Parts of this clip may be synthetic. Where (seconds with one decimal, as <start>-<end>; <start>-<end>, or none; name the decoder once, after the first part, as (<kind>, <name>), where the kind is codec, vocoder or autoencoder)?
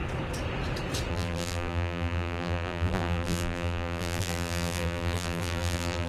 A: 1.1-6.1 (vocoder, BigVGAN v2)